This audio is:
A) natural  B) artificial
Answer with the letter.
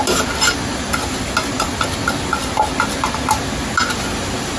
A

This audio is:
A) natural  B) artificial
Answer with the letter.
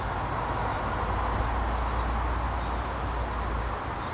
A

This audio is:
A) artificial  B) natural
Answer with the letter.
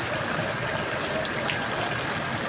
B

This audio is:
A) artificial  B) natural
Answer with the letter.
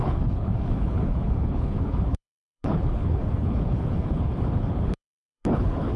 A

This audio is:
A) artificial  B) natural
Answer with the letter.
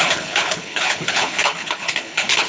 A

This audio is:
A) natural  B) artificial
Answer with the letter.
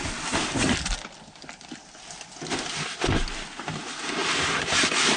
A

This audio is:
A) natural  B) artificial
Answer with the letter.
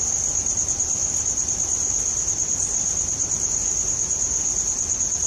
A